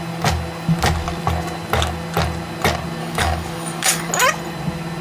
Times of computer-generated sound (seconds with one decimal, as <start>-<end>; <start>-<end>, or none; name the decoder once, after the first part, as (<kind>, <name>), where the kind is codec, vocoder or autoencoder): 3.0-4.1 (codec, DAC)